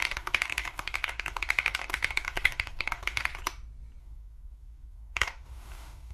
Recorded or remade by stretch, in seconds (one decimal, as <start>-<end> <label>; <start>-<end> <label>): 0.0-3.3 remade; 3.3-4.0 recorded; 4.0-6.1 remade